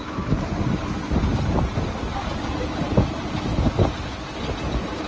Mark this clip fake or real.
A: real